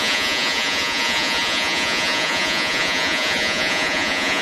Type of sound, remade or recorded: remade